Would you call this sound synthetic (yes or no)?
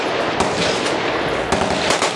no